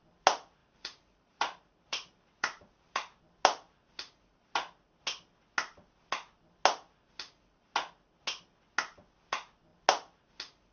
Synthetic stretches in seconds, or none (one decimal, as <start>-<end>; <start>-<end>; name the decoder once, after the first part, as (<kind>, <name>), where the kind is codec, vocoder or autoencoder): 0.6-3.2 (vocoder, BigVGAN v2)

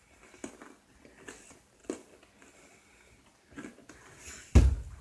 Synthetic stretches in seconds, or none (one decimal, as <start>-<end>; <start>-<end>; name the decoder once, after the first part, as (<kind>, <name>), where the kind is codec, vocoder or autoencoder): none

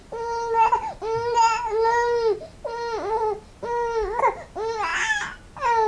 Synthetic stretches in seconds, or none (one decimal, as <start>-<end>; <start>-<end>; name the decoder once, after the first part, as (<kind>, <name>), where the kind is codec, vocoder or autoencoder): none

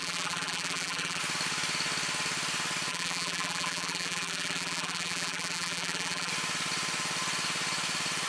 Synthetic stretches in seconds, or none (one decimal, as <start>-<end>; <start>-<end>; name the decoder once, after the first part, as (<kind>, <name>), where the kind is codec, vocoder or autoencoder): 0.0-1.2 (vocoder, BigVGAN v2); 2.9-6.3

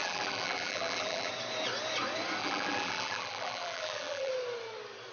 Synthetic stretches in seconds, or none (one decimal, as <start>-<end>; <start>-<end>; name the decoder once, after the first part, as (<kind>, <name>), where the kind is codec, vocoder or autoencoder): 0.0-1.3 (vocoder, BigVGAN v2); 2.4-4.3